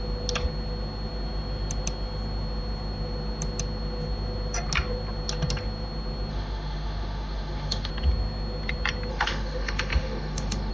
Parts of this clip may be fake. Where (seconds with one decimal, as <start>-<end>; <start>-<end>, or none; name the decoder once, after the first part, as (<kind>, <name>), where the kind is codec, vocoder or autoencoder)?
6.3-7.9 (autoencoder, DAC-VAE); 9.1-10.7